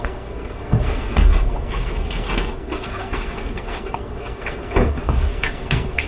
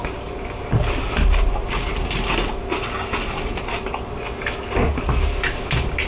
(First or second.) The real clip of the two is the second